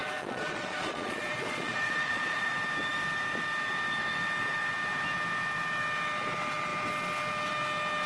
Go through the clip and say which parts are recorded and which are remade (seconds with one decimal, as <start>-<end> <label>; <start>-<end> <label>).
0.0-2.5 remade; 2.5-8.1 recorded